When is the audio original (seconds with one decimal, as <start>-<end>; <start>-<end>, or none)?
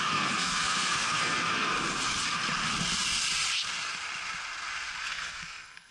1.7-5.0